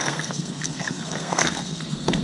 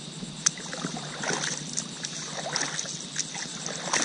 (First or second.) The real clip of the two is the second